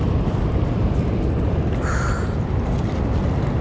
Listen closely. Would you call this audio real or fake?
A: real